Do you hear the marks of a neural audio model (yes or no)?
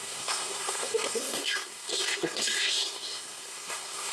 yes